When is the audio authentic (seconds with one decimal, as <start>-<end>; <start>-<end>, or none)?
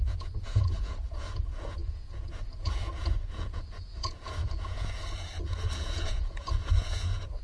none